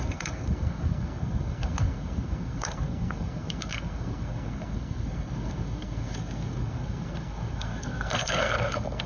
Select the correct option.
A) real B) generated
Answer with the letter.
B